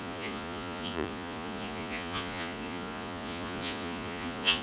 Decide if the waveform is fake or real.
fake